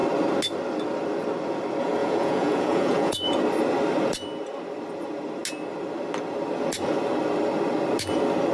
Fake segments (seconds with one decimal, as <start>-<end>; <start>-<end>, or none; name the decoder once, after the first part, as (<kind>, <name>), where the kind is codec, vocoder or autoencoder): 2.0-3.3 (vocoder, Vocos)